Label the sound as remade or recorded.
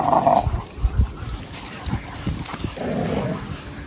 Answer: recorded